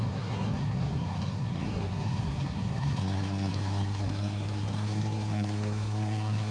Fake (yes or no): yes